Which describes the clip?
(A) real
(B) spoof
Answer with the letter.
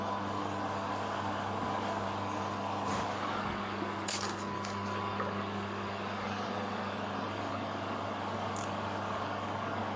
B